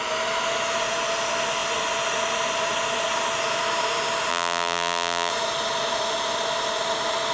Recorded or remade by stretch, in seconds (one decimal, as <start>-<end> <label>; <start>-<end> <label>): 0.0-4.3 recorded; 4.3-5.3 remade; 5.3-7.3 recorded